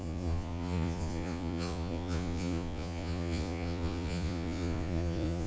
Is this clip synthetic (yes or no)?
yes